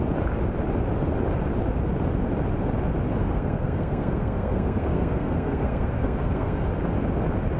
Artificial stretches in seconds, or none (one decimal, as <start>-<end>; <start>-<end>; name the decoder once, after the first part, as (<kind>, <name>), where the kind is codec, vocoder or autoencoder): 3.2-6.7 (codec, SNAC)